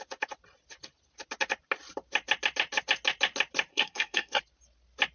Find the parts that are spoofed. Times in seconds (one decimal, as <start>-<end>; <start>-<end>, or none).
3.7-4.4